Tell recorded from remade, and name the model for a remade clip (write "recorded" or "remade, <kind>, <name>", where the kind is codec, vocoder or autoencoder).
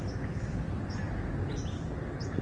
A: recorded